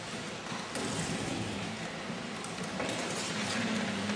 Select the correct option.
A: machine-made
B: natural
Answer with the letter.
B